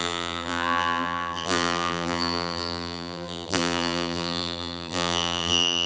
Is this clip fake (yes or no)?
yes